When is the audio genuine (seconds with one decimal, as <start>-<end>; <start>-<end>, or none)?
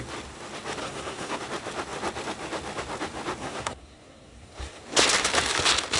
0.0-0.8; 1.4-3.4; 4.8-6.0